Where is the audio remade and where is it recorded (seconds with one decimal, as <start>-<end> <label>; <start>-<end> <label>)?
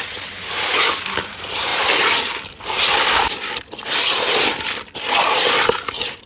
0.0-6.3 recorded